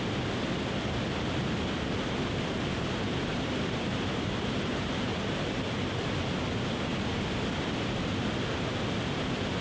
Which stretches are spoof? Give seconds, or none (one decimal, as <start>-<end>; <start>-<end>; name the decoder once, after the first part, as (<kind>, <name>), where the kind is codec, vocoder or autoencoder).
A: 3.3-5.4 (vocoder, BigVGAN v2)